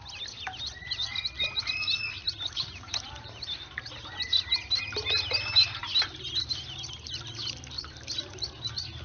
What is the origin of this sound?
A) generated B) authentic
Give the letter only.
B